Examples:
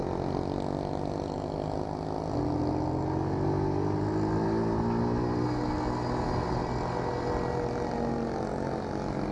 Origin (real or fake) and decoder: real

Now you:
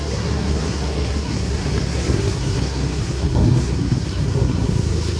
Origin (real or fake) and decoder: fake, codec, SNAC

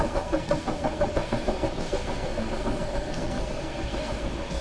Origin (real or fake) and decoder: fake, codec, SNAC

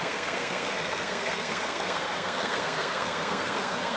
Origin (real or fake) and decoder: fake, codec, SNAC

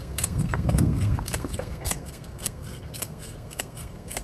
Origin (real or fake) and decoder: fake, codec, SNAC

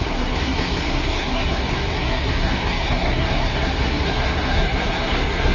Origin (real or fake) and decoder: fake, codec, SNAC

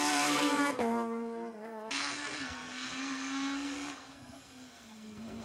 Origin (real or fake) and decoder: fake, codec, SNAC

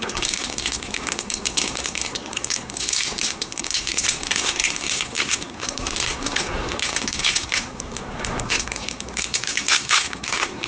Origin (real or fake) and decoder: fake, codec, SNAC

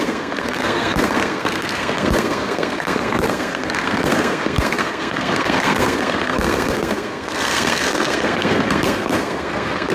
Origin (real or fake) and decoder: fake, codec, SNAC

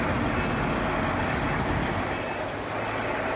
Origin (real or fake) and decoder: real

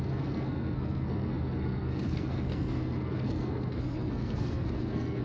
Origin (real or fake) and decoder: fake, codec, SNAC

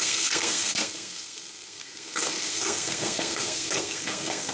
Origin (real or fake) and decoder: fake, codec, SNAC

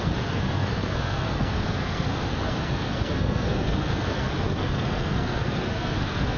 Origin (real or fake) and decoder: fake, codec, SNAC